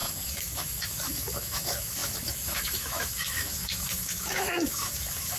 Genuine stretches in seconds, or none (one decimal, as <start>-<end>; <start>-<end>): none